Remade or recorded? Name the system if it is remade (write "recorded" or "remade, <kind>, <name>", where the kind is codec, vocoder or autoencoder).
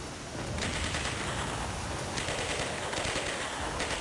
recorded